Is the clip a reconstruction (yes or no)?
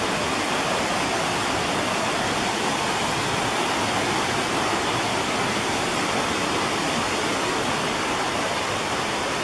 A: no